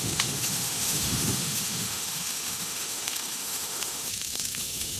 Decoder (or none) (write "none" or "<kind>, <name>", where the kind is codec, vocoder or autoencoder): autoencoder, DAC-VAE